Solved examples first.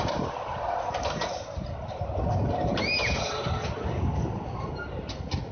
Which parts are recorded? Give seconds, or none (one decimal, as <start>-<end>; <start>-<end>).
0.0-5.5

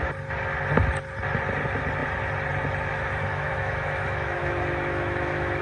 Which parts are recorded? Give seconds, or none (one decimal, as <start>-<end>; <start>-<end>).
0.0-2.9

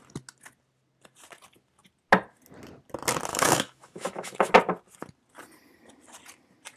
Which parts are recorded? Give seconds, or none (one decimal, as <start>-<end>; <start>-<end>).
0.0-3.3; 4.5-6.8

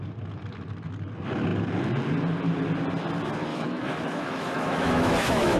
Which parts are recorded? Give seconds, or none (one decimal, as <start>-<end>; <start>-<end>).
0.0-3.5